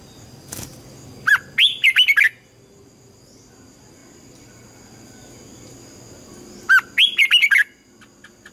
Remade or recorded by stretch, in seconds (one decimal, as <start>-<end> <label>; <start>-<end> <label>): 0.0-8.5 recorded